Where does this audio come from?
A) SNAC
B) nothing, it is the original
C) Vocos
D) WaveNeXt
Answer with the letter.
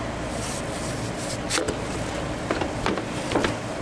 B